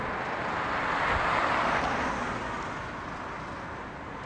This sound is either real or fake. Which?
real